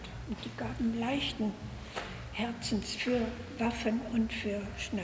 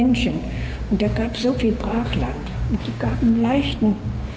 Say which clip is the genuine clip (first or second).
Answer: first